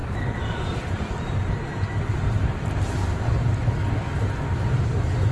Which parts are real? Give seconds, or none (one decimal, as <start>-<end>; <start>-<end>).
2.6-5.3